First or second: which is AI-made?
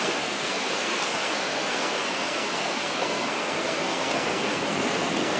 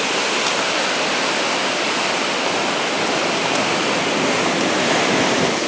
first